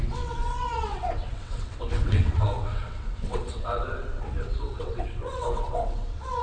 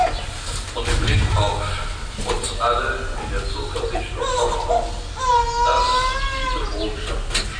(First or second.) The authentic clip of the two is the second